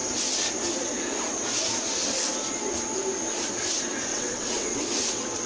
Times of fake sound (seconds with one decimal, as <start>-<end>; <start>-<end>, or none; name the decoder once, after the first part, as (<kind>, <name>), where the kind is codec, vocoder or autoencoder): 4.1-4.8 (vocoder, WaveNeXt)